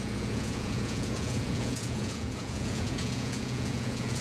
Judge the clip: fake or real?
fake